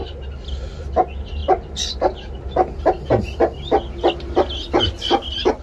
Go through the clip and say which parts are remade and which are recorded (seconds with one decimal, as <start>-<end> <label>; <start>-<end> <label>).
0.0-5.6 recorded